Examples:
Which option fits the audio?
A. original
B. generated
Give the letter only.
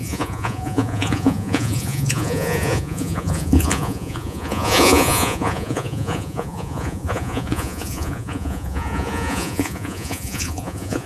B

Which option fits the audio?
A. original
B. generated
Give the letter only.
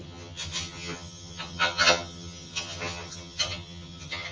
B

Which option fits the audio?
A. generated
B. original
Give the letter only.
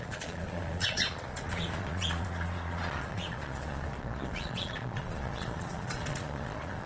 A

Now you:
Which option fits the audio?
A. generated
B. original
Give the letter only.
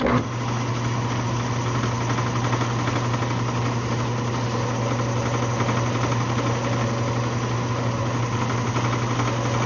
B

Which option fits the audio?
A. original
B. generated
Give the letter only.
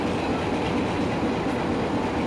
A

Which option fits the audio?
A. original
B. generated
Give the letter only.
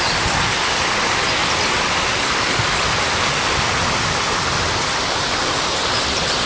A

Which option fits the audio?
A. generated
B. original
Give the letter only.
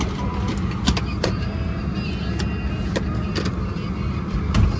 B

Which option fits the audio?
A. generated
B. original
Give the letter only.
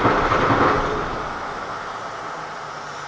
B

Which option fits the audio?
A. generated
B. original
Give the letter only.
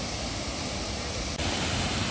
B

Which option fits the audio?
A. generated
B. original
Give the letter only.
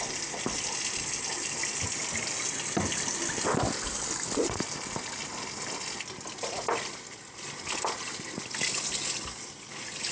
B